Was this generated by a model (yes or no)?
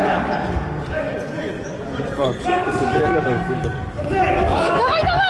yes